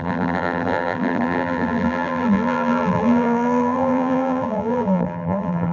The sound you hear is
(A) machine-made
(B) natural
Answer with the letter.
A